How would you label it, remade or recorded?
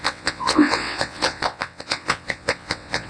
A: remade